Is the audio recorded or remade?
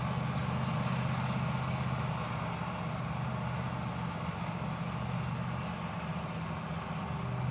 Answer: recorded